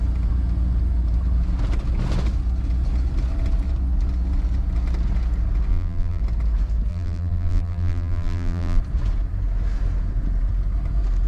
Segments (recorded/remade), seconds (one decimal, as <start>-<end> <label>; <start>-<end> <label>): 0.0-5.7 recorded; 5.7-6.2 remade; 6.2-6.9 recorded; 6.9-8.8 remade; 8.8-11.3 recorded